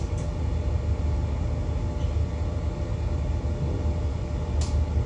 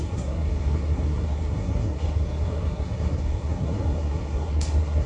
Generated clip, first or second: second